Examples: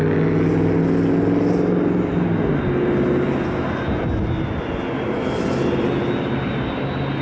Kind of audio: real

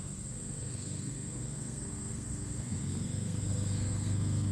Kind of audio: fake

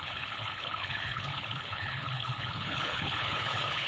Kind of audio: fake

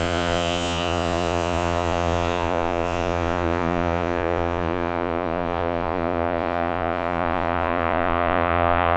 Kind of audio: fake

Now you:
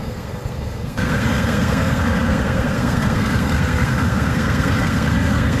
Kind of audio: fake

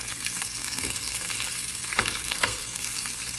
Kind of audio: fake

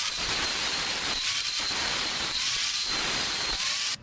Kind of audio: fake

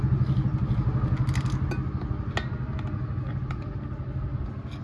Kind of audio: real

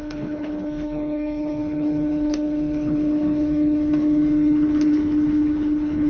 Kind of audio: fake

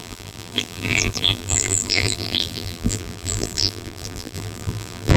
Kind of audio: fake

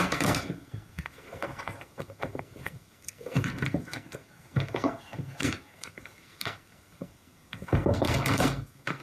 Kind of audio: fake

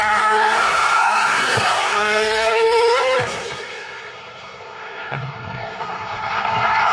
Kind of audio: fake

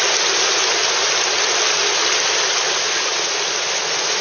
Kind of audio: real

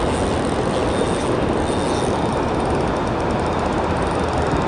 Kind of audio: real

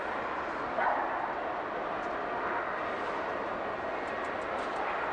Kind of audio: real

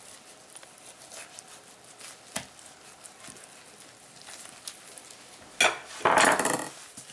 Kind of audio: real